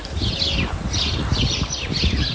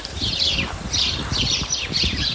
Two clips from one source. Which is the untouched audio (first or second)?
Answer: first